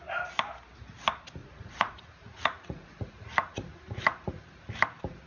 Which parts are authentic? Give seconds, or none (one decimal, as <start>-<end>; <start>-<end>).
0.0-1.4; 4.6-5.3